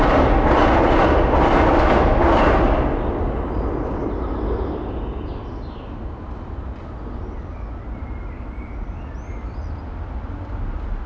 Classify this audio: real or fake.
real